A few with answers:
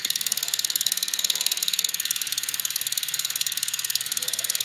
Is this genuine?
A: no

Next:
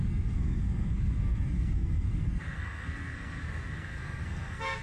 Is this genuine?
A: no